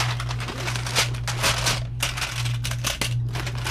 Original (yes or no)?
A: yes